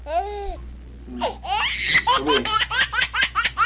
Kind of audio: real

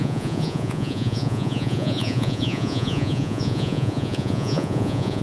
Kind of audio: fake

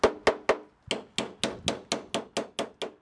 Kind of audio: real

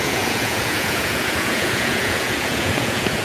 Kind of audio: fake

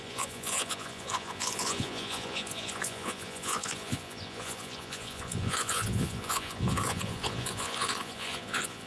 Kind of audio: fake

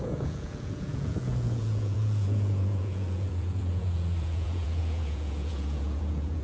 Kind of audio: fake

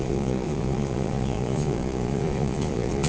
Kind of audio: fake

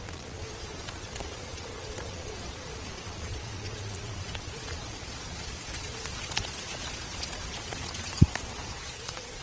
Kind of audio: fake